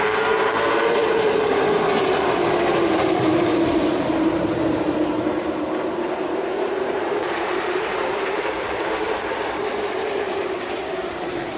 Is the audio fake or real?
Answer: fake